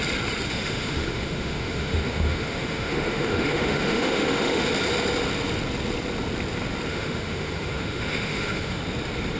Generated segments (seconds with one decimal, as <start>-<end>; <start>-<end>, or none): 0.5-4.7; 6.9-8.8